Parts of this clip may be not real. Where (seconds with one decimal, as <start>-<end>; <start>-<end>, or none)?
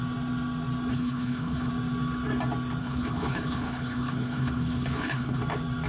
0.9-1.7; 2.8-5.4